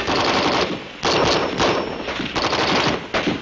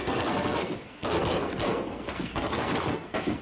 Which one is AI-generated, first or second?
second